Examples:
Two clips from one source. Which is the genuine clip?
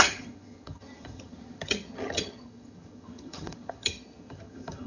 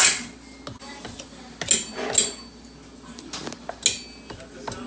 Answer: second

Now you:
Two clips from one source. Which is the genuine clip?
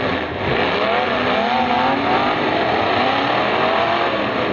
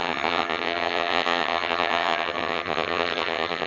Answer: first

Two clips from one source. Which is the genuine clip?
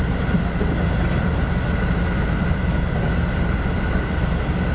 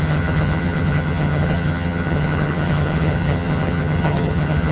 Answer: first